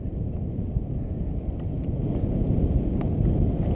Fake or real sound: real